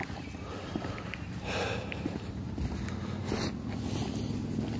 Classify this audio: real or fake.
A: real